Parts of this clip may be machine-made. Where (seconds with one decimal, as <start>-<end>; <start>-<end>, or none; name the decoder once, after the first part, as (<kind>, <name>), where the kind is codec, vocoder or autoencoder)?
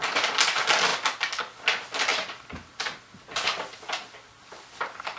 none